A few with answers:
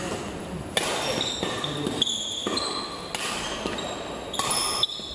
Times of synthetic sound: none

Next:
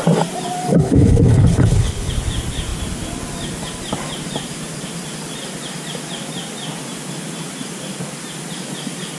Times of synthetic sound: 0.7-2.1 (codec, HILCodec)

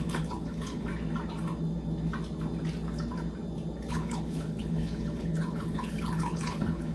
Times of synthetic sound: 0.0-0.9 (codec, HILCodec); 3.9-6.9

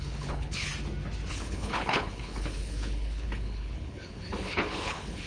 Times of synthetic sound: 0.0-0.7 (codec, HILCodec); 1.3-5.3